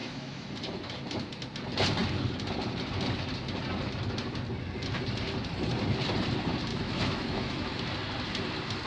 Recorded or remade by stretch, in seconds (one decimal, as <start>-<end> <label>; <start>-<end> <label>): 0.0-0.5 remade; 0.5-6.7 recorded; 6.7-7.8 remade; 7.8-8.9 recorded